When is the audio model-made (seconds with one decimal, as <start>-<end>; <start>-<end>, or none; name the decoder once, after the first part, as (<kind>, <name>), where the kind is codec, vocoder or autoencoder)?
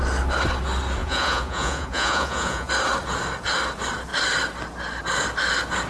1.0-2.7 (vocoder, Vocos)